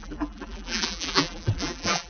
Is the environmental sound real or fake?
fake